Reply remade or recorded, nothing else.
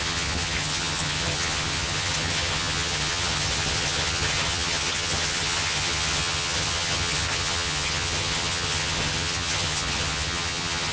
remade